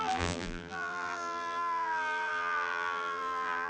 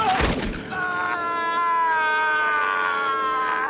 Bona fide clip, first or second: second